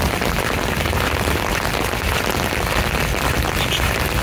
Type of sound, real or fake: real